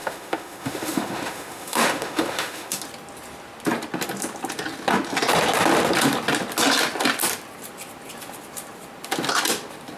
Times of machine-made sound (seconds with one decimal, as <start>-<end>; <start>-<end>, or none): 0.0-2.8